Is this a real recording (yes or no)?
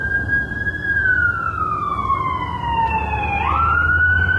yes